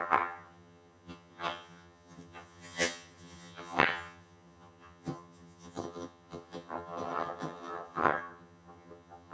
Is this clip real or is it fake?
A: fake